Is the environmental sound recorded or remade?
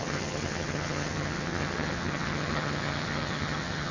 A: remade